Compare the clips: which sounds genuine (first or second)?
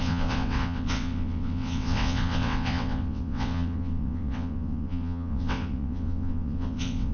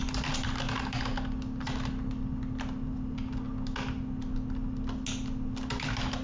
second